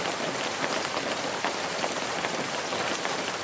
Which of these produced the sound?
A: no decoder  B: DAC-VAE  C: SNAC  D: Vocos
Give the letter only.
A